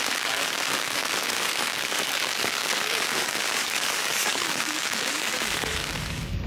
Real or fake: fake